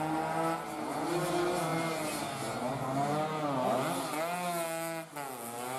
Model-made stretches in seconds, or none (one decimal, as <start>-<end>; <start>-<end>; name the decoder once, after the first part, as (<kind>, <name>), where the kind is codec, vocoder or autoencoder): none